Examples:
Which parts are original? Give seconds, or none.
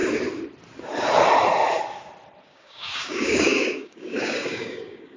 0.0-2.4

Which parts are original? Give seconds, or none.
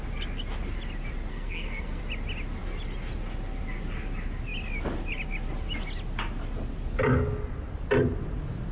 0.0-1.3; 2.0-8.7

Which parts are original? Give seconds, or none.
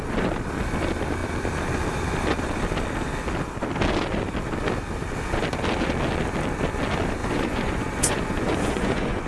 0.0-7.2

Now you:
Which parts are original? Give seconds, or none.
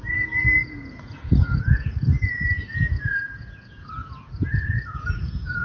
none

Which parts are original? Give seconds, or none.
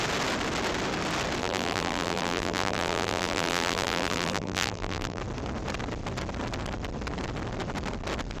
0.0-1.4; 5.2-8.4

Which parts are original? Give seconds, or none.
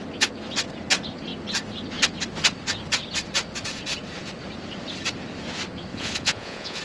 0.0-5.9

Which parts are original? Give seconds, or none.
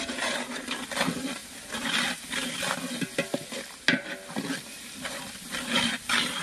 1.4-4.3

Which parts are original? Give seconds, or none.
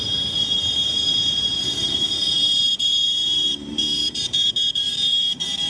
none